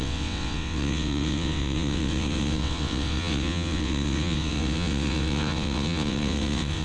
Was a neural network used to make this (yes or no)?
yes